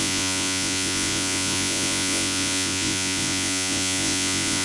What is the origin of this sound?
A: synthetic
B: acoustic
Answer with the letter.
A